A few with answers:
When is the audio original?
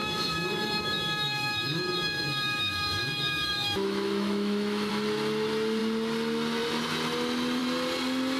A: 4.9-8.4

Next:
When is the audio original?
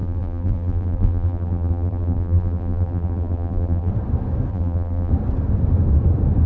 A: 3.9-4.5; 5.1-6.5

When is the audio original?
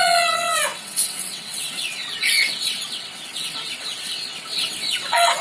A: none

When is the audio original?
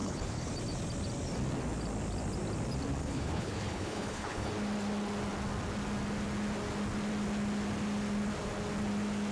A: 0.5-3.0; 4.5-9.3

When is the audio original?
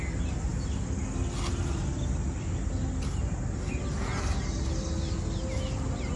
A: 0.0-6.2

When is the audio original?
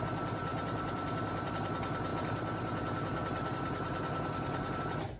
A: 0.0-0.5; 1.5-5.2